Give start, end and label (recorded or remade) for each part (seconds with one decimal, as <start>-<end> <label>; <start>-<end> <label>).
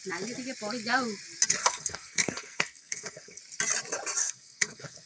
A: 0.0-1.6 recorded; 1.6-3.4 remade; 3.4-4.2 recorded; 4.2-5.1 remade